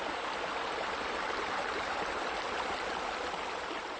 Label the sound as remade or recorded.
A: remade